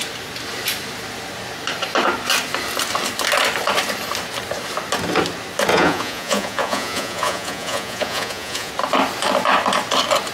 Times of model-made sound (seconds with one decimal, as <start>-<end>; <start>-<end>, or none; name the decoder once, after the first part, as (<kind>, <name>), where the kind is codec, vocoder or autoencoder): 5.7-8.7 (vocoder, Vocos)